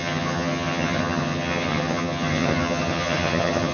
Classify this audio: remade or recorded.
remade